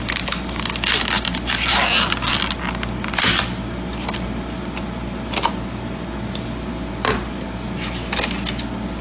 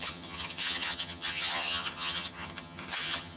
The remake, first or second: second